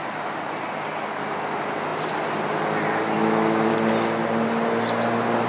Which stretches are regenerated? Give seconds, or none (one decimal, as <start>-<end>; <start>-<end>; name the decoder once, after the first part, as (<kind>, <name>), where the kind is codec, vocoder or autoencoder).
none

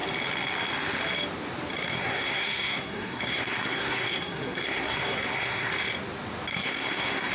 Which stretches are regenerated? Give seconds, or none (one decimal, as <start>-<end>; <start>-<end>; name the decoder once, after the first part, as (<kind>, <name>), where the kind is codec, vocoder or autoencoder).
1.7-5.7 (codec, SNAC); 6.5-7.3

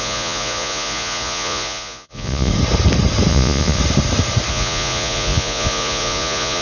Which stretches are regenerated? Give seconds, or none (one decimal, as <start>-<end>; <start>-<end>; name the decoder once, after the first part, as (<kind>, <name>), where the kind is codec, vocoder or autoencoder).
0.0-2.5 (vocoder, Vocos); 3.3-3.8; 4.5-6.6

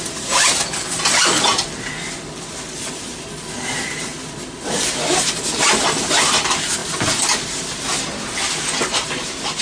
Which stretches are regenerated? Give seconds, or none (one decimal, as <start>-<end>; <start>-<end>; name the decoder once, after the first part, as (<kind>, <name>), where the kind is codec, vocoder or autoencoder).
none

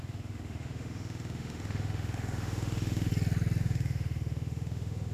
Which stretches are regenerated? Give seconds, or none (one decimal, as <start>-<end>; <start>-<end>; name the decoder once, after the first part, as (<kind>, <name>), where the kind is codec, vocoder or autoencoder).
0.0-3.1 (autoencoder, DAC-VAE); 3.6-5.1

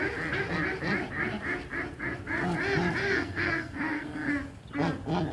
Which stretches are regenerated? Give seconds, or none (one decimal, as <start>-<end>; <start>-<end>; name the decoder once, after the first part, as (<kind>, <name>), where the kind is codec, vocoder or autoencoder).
3.0-4.3 (codec, SNAC)

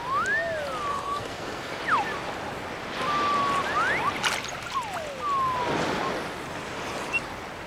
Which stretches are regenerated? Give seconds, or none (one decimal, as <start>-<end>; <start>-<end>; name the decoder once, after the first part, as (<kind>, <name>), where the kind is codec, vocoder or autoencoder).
0.9-1.8 (codec, SNAC)

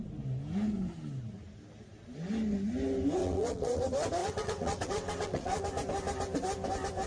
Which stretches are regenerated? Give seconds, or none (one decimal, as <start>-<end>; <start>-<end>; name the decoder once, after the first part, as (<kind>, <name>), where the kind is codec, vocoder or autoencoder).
3.2-3.8 (vocoder, WaveNeXt); 4.2-5.6